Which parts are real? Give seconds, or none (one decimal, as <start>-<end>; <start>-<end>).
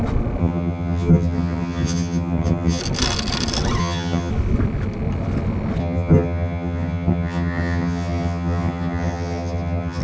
0.0-0.4; 2.8-3.8; 4.3-5.8